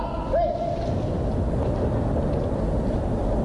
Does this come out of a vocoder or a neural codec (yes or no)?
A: no